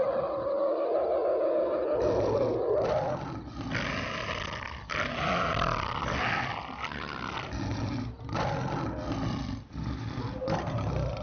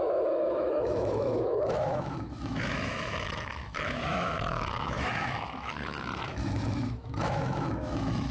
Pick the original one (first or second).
first